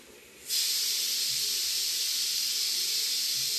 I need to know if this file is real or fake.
real